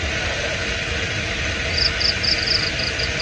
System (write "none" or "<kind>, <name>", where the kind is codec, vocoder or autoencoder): none